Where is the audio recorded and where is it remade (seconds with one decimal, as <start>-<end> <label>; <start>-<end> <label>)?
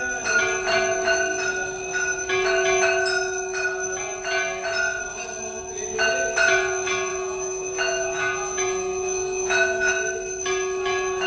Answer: 0.0-7.1 recorded; 7.1-9.9 remade; 9.9-11.3 recorded